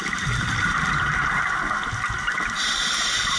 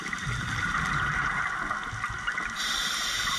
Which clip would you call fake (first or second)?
first